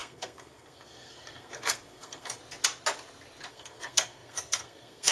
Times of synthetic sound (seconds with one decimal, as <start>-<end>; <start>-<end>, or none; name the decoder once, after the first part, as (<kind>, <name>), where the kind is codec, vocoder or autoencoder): 0.0-2.4 (codec, SNAC); 3.5-5.1